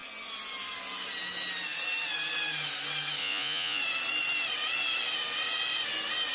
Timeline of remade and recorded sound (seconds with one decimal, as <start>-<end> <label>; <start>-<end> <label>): 0.0-3.2 recorded; 3.2-3.8 remade; 3.8-6.3 recorded